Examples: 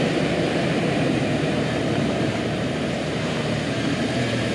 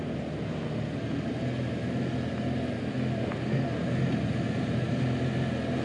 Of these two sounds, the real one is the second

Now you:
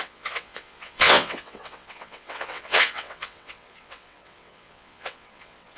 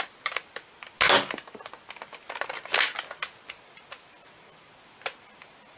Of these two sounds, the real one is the second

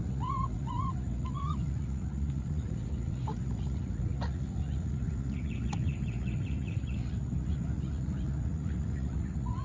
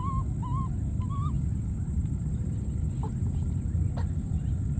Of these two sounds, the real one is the second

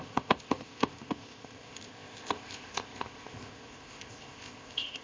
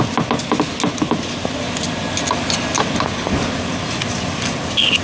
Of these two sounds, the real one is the second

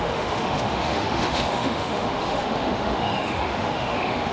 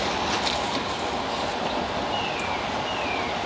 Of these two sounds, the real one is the second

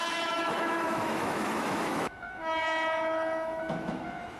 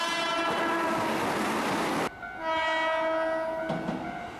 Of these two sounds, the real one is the second